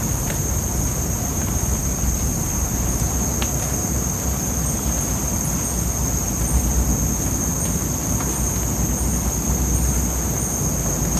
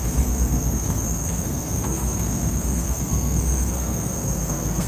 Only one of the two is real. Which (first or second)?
first